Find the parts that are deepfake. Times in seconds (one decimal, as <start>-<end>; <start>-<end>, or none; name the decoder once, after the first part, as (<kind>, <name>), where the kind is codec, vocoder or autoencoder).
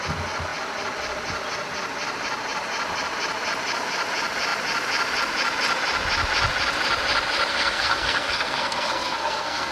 7.5-9.7 (codec, SNAC)